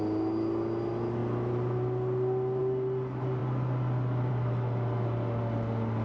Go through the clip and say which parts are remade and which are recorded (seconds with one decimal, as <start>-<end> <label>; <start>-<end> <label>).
0.0-6.0 recorded